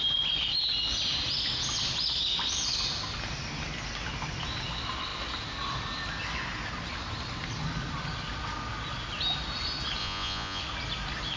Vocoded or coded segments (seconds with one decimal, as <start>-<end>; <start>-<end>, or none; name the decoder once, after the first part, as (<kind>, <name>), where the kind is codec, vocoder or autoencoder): 10.0-10.6 (vocoder, Vocos)

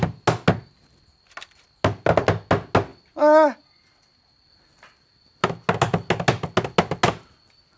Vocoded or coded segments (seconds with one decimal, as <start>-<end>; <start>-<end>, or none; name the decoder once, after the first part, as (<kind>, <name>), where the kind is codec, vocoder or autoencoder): none